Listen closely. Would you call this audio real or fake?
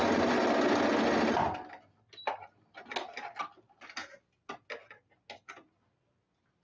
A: real